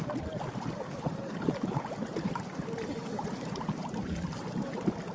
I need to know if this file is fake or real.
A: real